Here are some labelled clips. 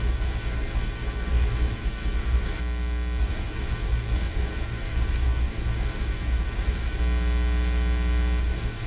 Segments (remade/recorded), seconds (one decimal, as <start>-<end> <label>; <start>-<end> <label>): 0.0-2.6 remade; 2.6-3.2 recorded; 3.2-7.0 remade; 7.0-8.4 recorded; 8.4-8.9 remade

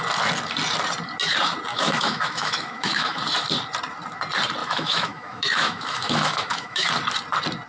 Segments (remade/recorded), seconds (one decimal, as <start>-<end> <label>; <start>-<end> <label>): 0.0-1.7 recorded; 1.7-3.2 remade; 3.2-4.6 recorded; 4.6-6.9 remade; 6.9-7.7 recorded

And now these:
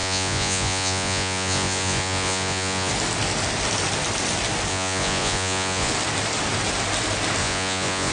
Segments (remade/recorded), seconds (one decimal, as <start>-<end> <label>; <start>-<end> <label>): 0.0-2.9 remade; 2.9-4.7 recorded; 4.7-5.9 remade; 5.9-7.4 recorded; 7.4-8.1 remade

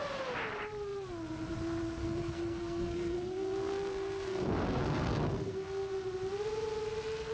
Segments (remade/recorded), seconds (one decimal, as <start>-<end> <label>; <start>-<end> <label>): 0.0-2.0 recorded; 2.0-5.9 remade; 5.9-7.3 recorded

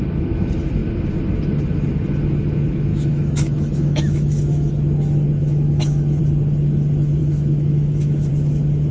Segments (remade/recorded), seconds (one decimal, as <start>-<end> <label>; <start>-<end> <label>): 0.0-2.9 recorded; 2.9-4.7 remade; 4.7-5.4 recorded; 5.4-6.2 remade; 6.2-7.2 recorded; 7.2-8.3 remade; 8.3-8.9 recorded

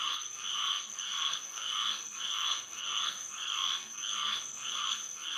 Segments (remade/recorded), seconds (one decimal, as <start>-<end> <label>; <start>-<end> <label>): 0.0-5.4 remade

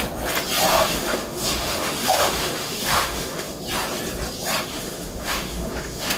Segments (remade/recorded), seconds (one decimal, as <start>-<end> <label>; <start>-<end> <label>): 0.0-0.7 recorded; 0.7-3.6 remade; 3.6-4.7 recorded; 4.7-6.2 remade